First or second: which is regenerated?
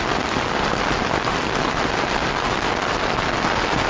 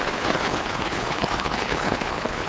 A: second